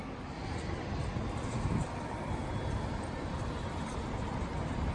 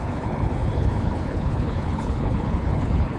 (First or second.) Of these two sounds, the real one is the first